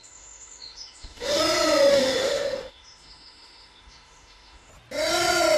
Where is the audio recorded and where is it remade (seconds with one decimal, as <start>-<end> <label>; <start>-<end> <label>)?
0.0-1.4 remade; 1.4-1.9 recorded; 1.9-4.7 remade; 4.7-5.6 recorded